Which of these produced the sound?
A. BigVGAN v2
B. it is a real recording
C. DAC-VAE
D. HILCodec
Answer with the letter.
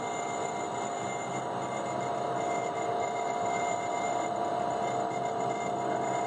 B